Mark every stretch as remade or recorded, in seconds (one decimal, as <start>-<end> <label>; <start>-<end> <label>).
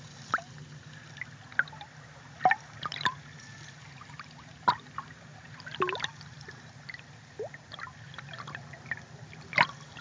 0.0-10.0 recorded